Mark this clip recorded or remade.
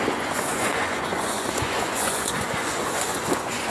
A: remade